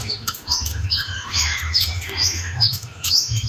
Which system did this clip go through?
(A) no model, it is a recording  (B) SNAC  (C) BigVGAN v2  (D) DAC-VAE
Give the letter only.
D